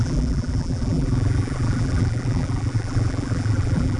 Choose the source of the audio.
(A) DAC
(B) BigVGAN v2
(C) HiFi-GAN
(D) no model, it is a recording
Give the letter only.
B